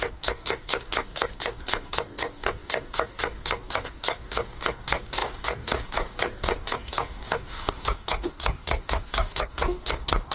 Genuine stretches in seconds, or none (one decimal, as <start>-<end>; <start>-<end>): none